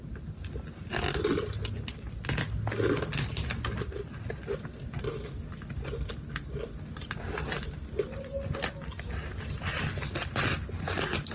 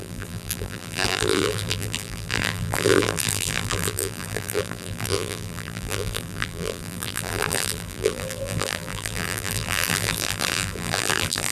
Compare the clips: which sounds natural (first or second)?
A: first